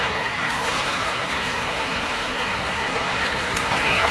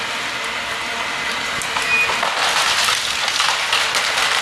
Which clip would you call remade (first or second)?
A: first